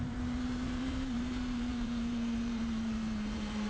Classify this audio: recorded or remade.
remade